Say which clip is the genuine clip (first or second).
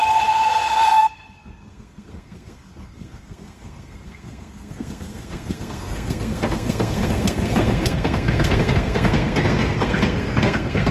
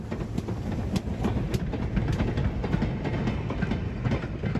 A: second